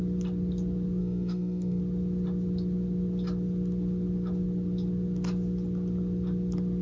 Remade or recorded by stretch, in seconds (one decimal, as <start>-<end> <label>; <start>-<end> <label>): 0.0-1.0 recorded; 1.0-1.8 remade; 1.8-6.8 recorded